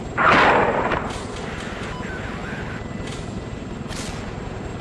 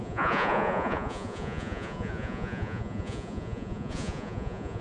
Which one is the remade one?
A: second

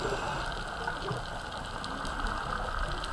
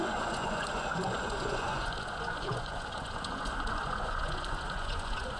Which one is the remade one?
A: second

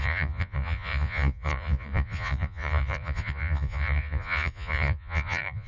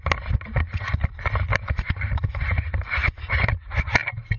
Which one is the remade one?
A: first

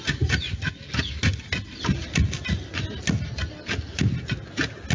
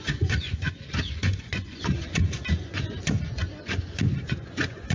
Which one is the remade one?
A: second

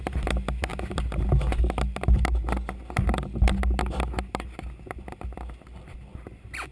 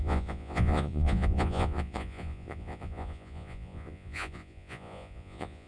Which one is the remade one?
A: second